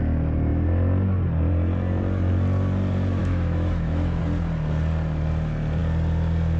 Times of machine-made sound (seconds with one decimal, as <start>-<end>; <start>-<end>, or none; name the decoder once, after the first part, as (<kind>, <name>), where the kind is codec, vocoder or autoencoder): 3.2-4.2 (autoencoder, DAC-VAE)